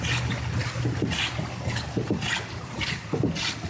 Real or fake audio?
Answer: real